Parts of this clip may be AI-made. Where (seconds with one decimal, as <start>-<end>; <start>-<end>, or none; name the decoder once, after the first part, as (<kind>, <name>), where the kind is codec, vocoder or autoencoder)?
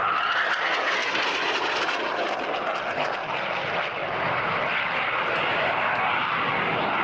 none